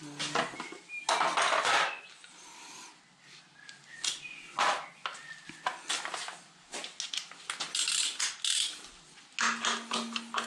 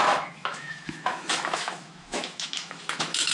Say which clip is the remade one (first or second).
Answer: second